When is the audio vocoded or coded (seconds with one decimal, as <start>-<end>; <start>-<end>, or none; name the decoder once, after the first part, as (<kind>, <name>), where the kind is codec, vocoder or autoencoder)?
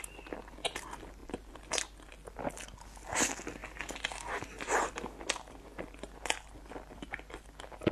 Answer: none